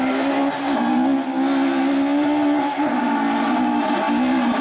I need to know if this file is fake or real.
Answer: real